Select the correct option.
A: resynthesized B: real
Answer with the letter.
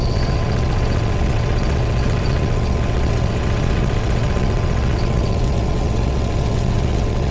A